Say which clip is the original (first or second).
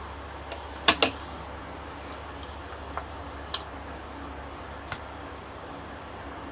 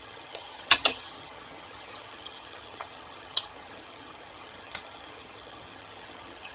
first